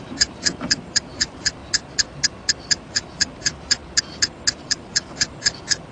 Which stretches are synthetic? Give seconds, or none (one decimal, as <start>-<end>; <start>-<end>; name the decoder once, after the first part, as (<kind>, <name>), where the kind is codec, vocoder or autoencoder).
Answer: 0.0-1.6 (vocoder, BigVGAN v2); 2.7-3.8; 4.6-5.9